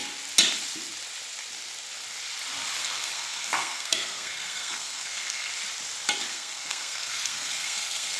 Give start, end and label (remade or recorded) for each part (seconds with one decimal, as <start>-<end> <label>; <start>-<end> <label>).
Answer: 0.0-2.8 recorded; 2.8-5.5 remade; 5.5-6.3 recorded; 6.3-8.2 remade